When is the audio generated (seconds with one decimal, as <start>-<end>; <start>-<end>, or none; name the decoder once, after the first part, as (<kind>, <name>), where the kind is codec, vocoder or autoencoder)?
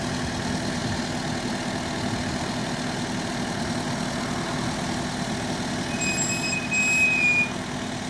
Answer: none